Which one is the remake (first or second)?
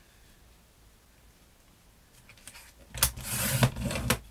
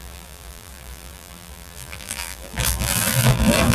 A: second